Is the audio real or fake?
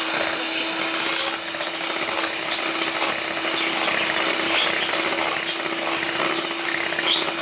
real